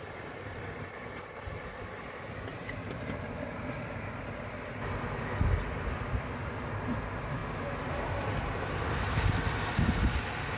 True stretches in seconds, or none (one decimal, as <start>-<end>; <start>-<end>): 0.0-2.5; 3.6-10.6